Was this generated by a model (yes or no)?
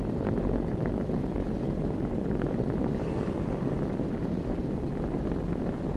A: no